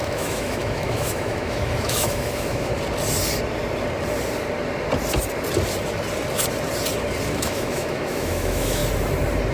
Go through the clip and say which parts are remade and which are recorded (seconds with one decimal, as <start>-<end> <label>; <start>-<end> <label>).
0.0-2.7 remade; 2.7-7.3 recorded; 7.3-8.8 remade; 8.8-9.5 recorded